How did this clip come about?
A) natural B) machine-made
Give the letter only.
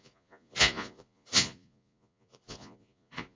B